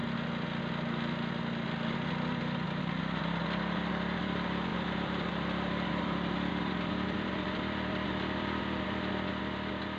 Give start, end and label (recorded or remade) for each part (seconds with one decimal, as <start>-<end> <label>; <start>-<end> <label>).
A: 0.0-4.7 recorded; 4.7-9.0 remade; 9.0-10.0 recorded